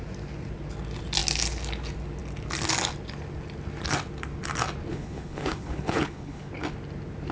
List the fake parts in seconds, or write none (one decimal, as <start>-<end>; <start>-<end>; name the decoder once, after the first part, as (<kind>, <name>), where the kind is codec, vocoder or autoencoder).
4.9-6.5 (codec, HILCodec)